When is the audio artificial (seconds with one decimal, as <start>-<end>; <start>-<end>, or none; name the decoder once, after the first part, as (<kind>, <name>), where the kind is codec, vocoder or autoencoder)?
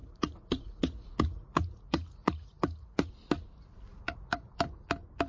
0.0-3.1 (vocoder, Vocos); 3.9-4.5